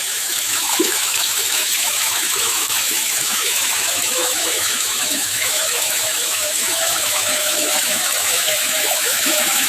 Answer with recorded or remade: remade